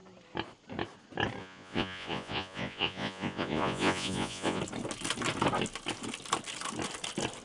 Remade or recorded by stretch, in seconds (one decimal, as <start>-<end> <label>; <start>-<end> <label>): 0.0-1.4 recorded; 1.4-4.6 remade; 4.6-7.4 recorded

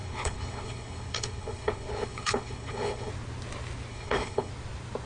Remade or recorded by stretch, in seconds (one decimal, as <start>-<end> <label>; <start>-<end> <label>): 0.0-3.1 remade; 3.1-3.9 recorded; 3.9-4.5 remade; 4.5-5.1 recorded

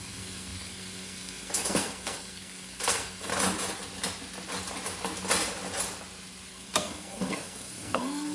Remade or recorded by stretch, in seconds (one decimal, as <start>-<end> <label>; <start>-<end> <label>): 0.0-3.3 remade; 3.3-6.5 recorded; 6.5-8.3 remade

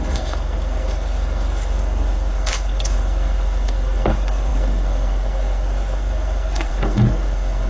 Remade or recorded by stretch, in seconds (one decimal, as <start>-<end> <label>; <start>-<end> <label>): 0.0-7.7 remade

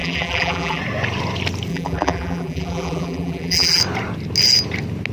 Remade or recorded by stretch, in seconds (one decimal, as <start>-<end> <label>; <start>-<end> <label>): 0.0-0.8 remade; 0.8-1.7 recorded; 1.7-3.8 remade; 3.8-5.1 recorded